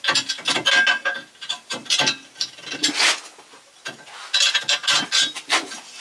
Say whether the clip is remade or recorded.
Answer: recorded